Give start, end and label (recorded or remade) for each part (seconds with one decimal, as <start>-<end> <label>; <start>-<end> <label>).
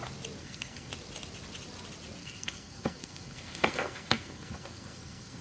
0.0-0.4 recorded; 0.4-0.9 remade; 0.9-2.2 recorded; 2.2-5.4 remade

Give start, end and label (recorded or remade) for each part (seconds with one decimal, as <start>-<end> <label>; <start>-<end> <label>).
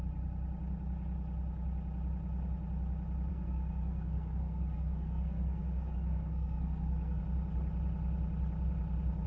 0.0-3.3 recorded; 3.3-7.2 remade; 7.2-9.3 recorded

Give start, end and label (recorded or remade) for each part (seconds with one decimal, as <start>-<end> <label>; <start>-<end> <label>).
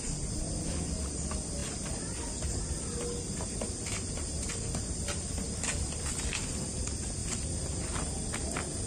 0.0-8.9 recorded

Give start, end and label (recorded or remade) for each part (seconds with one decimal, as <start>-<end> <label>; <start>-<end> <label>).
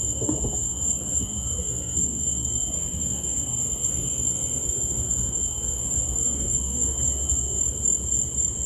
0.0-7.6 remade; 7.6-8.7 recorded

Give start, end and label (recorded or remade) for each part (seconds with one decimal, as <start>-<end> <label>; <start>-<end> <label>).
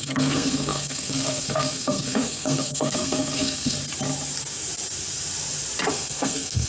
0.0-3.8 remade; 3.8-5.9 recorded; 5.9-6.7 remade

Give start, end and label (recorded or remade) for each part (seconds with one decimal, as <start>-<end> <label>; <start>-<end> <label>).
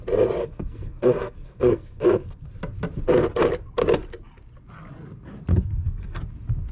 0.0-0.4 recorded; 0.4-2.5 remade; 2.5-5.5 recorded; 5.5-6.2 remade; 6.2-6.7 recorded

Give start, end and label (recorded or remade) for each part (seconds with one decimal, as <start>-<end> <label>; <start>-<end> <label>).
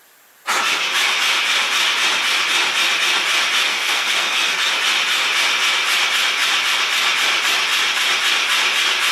0.0-3.7 recorded; 3.7-4.7 remade; 4.7-9.1 recorded